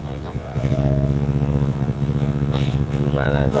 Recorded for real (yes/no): no